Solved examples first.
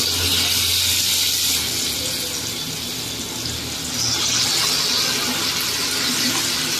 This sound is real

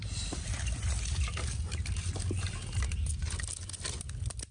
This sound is real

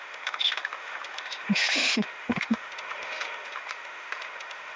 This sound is fake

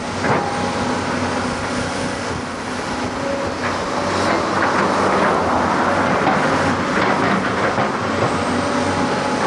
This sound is real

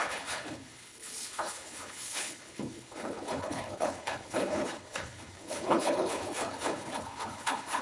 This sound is fake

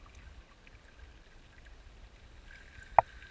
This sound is real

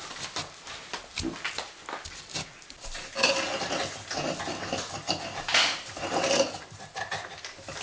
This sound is real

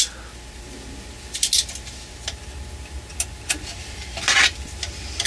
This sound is real